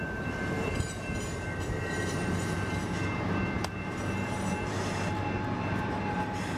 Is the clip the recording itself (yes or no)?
no